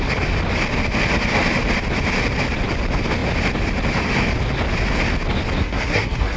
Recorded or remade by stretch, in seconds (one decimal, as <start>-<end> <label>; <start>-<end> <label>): 0.0-5.6 recorded; 5.6-6.4 remade

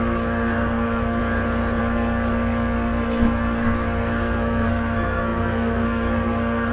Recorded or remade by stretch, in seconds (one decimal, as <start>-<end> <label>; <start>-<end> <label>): 0.0-1.2 remade; 1.2-1.8 recorded; 1.8-6.7 remade